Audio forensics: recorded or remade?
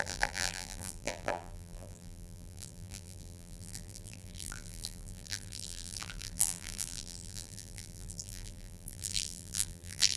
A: remade